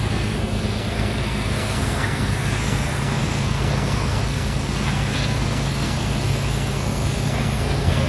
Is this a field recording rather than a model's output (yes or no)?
no